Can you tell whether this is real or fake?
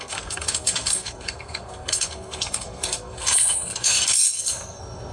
fake